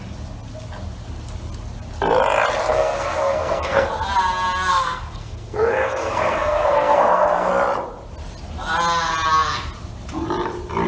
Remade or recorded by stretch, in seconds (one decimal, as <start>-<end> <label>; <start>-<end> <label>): 0.0-2.6 recorded; 2.6-3.9 remade; 3.9-4.7 recorded; 4.7-7.5 remade; 7.5-10.9 recorded